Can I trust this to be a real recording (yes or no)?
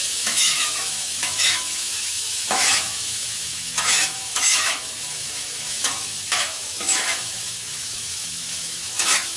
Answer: no